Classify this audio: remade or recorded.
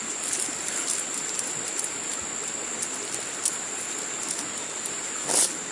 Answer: recorded